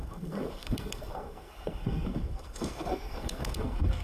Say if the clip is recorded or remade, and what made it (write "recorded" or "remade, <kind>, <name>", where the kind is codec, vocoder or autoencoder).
remade, codec, SNAC